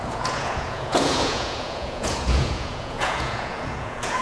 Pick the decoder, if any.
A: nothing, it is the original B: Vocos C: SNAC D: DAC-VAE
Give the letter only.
B